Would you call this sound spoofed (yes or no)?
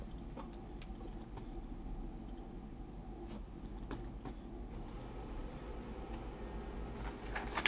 no